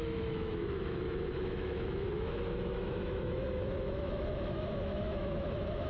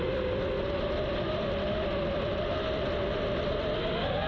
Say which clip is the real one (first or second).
second